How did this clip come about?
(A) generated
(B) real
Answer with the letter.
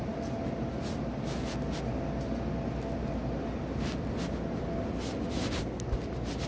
B